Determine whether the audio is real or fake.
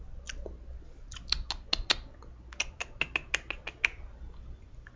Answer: real